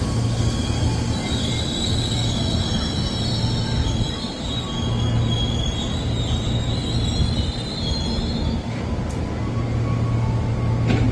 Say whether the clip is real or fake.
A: real